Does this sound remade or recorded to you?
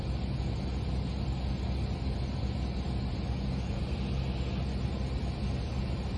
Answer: recorded